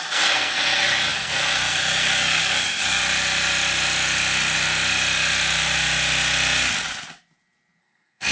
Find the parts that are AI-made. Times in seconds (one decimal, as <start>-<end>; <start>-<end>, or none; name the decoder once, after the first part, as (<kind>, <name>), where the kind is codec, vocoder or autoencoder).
0.0-3.0 (codec, SNAC); 7.8-8.3